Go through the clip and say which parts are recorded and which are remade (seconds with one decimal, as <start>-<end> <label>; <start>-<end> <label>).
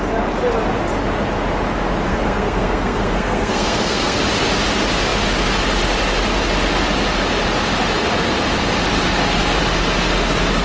0.0-2.1 recorded; 2.1-4.2 remade; 4.2-10.6 recorded